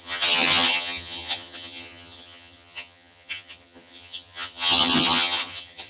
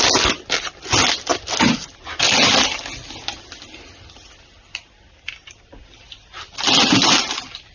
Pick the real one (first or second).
second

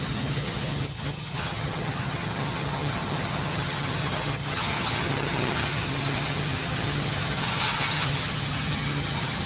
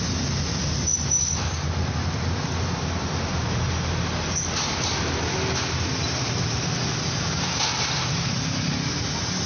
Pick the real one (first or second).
second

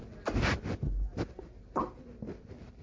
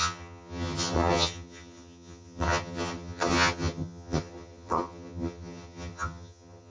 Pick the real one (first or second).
first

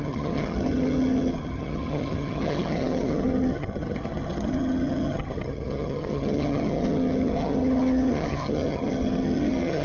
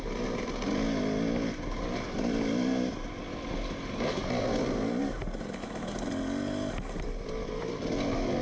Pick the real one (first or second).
second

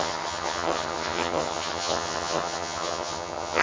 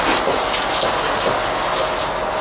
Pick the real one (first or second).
second